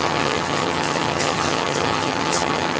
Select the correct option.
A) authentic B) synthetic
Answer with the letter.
B